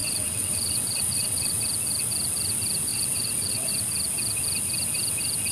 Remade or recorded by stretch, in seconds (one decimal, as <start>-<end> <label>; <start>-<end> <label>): 0.0-1.6 remade; 1.6-2.9 recorded; 2.9-3.7 remade; 3.7-5.5 recorded